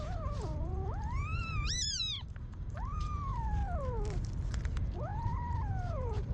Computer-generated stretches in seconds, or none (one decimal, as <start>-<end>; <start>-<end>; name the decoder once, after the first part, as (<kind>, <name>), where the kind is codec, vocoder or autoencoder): 0.0-3.6 (vocoder, BigVGAN v2); 4.5-6.3